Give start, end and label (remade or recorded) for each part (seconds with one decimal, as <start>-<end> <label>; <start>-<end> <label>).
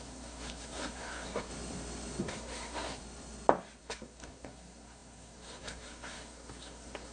0.0-1.5 remade; 1.5-2.2 recorded; 2.2-3.0 remade; 3.0-3.8 recorded; 3.8-7.1 remade